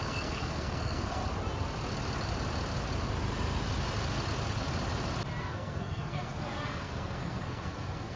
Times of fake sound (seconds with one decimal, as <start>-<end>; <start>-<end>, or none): 0.0-1.2; 5.4-8.2